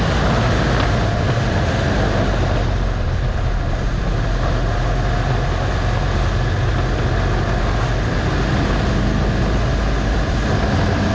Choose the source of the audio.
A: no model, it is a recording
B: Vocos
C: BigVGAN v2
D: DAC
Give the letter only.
A